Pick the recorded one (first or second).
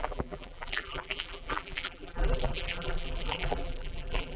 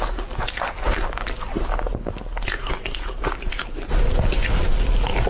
second